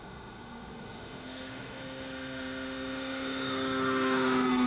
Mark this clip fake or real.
fake